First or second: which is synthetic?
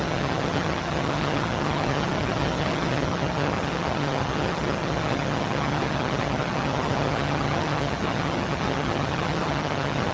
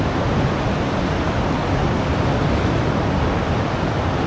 first